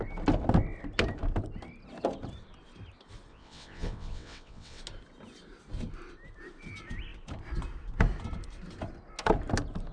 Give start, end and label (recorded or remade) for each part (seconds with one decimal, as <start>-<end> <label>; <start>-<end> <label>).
0.0-3.3 recorded; 3.3-4.8 remade; 4.8-9.9 recorded